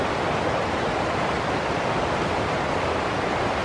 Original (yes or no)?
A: yes